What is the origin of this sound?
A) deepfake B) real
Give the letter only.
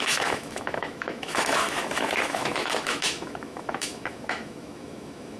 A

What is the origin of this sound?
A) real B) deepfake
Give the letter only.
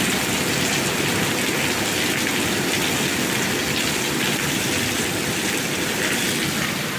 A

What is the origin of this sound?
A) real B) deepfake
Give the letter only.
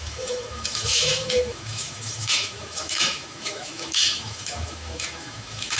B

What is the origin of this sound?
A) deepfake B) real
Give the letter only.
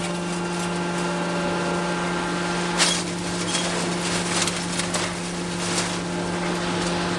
B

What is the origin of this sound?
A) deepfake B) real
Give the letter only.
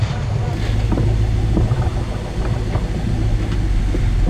B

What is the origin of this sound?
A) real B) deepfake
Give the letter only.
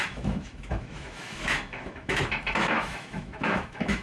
B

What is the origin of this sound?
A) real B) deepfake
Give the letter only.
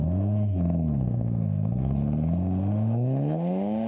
B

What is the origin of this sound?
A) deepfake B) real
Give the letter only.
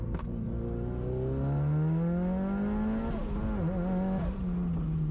B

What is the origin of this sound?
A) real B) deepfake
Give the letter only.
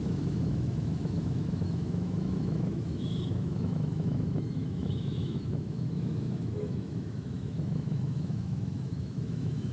B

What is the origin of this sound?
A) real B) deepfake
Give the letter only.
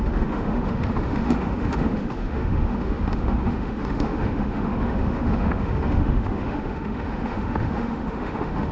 B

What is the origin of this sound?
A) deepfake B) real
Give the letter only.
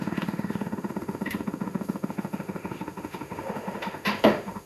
A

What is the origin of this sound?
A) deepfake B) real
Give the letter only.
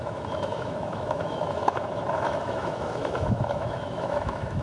A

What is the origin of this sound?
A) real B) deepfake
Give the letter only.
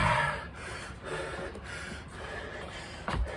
A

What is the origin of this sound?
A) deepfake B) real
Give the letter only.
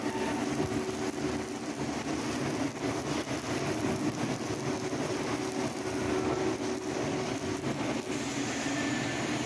B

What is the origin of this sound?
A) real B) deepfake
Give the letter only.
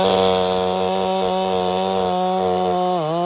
A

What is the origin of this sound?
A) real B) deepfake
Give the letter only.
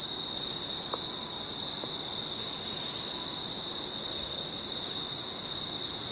A